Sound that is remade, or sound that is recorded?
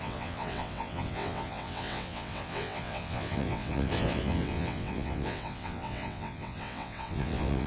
remade